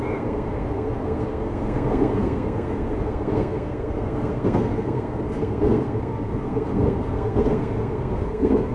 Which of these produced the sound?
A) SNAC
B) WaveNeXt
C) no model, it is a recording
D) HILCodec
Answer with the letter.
A